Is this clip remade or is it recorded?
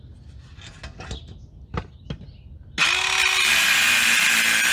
recorded